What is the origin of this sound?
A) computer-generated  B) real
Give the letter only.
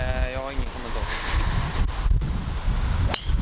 B